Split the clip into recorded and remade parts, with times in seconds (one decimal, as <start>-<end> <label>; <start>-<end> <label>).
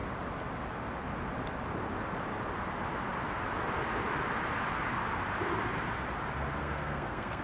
0.0-6.6 recorded; 6.6-7.4 remade